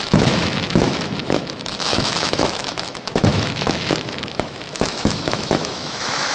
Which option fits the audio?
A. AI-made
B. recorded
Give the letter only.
A